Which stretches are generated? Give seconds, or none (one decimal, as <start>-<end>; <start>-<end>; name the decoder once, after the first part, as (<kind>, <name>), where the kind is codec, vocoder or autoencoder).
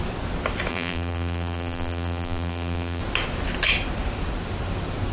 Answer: 0.7-3.0 (vocoder, BigVGAN v2)